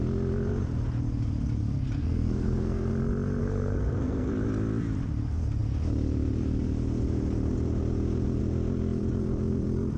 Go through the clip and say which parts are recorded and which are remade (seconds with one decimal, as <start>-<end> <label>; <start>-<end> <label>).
0.0-2.0 recorded; 2.0-2.9 remade; 2.9-3.4 recorded; 3.4-4.3 remade; 4.3-10.0 recorded